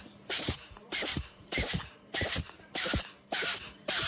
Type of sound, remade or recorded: remade